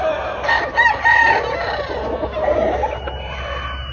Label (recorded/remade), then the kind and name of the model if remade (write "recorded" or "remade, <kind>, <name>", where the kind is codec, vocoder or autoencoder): recorded